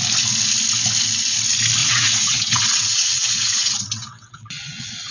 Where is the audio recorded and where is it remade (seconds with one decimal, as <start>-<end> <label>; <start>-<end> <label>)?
0.0-1.8 recorded; 1.8-5.1 remade